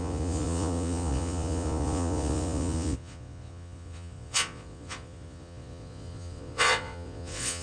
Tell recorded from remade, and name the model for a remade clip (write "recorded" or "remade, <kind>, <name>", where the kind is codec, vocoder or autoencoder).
remade, vocoder, Vocos